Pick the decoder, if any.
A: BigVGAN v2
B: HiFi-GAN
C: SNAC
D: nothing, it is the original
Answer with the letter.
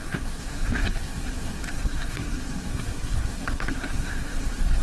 C